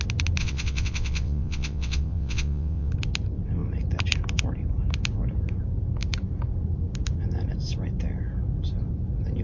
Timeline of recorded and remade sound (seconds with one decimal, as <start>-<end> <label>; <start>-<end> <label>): 0.0-0.4 recorded; 0.4-2.9 remade; 2.9-9.4 recorded